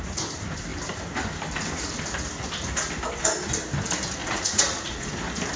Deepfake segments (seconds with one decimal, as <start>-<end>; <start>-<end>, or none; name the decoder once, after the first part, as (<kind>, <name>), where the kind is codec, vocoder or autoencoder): 4.2-5.1 (vocoder, Vocos)